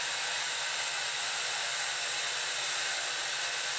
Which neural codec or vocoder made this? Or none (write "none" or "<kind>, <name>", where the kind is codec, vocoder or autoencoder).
none